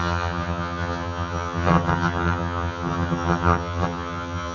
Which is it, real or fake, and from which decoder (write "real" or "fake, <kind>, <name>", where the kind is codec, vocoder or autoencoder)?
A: fake, vocoder, HiFi-GAN